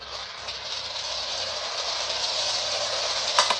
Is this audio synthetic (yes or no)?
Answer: no